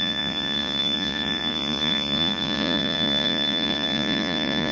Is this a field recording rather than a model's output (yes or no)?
no